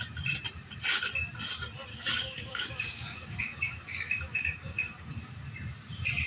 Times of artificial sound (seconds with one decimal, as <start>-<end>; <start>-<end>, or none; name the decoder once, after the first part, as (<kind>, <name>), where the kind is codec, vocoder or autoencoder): 1.9-5.3 (codec, DAC)

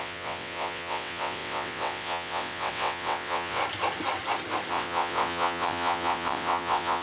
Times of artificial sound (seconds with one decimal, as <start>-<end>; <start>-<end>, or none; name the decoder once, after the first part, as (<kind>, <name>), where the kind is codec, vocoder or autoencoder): 0.0-3.6 (vocoder, WaveNeXt); 4.7-7.0